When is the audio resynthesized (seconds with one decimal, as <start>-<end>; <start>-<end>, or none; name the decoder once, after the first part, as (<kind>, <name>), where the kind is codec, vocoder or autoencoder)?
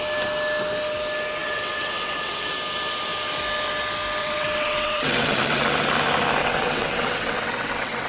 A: 1.4-2.5 (vocoder, WaveNeXt); 4.2-5.7; 6.4-8.1